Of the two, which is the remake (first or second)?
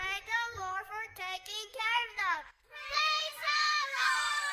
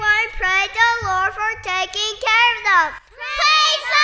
first